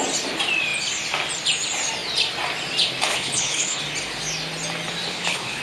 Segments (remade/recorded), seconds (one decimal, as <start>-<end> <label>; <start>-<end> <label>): 0.0-3.1 recorded; 3.1-3.8 remade; 3.8-5.1 recorded; 5.1-5.6 remade